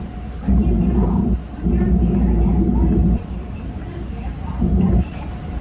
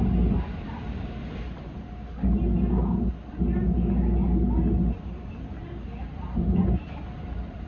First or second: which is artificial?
first